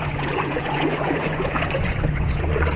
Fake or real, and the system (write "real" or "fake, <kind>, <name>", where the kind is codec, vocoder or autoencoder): fake, vocoder, Vocos